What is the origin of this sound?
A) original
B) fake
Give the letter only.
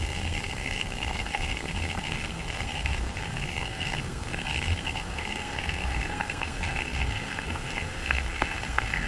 B